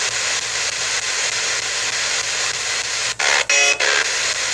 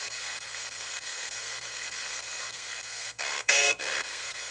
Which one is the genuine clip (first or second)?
first